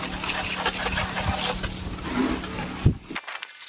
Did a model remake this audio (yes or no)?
no